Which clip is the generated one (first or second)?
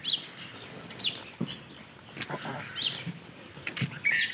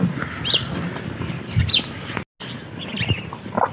first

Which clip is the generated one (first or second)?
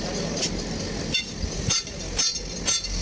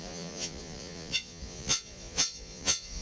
second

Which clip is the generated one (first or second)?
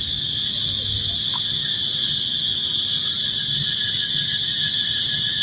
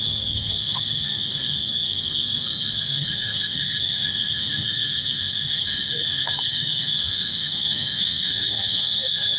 second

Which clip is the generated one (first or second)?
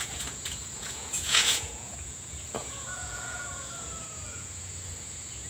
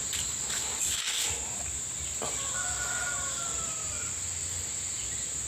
first